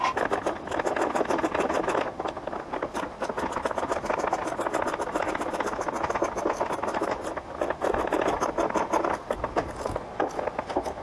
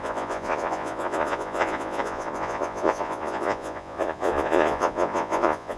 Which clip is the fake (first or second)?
second